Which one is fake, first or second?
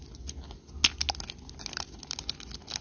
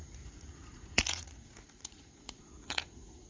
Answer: second